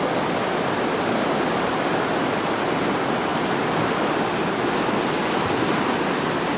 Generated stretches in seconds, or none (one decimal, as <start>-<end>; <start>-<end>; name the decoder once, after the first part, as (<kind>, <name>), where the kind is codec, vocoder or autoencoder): 3.3-4.0 (vocoder, BigVGAN v2)